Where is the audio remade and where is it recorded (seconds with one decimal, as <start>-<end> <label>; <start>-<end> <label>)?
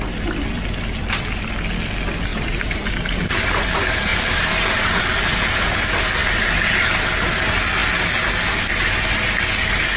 0.0-2.3 recorded; 2.3-3.6 remade; 3.6-4.1 recorded; 4.1-5.0 remade; 5.0-6.2 recorded; 6.2-7.0 remade; 7.0-10.0 recorded